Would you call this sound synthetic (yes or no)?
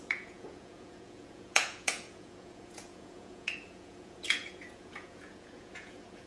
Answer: yes